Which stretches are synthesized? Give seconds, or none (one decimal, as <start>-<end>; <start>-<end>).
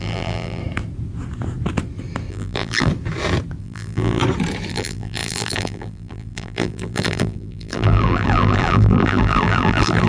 0.0-0.6; 2.3-2.9; 3.6-4.2; 4.7-10.1